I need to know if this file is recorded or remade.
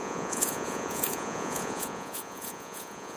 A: remade